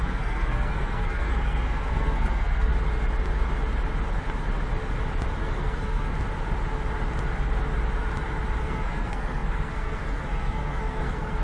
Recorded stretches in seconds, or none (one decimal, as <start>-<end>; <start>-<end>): 2.7-5.4; 6.1-8.6